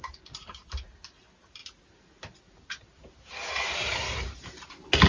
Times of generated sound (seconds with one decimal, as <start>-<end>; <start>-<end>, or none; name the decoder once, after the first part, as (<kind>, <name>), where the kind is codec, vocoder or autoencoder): none